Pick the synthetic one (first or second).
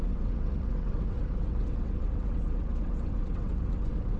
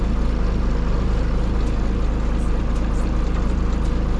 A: first